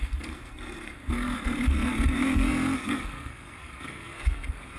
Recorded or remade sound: remade